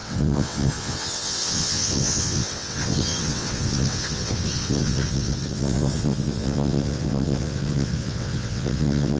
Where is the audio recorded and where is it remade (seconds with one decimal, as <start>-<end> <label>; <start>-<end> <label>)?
0.0-9.2 remade